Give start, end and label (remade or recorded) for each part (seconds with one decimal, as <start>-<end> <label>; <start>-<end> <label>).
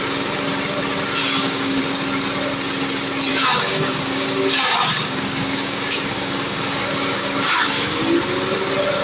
0.0-1.2 recorded; 1.2-1.8 remade; 1.8-3.3 recorded; 3.3-8.0 remade; 8.0-9.0 recorded